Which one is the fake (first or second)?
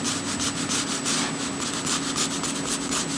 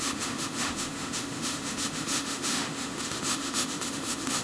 second